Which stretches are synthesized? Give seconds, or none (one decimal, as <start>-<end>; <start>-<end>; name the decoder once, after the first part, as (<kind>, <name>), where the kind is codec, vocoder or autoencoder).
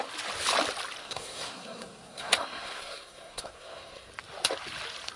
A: 1.0-4.1 (codec, SNAC)